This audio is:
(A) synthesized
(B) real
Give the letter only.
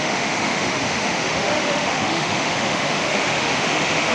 A